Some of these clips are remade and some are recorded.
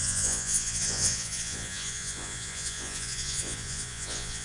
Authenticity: remade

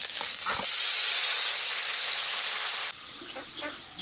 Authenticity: recorded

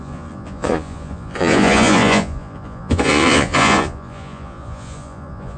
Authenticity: remade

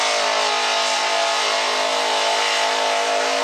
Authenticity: recorded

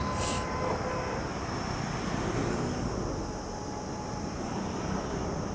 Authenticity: recorded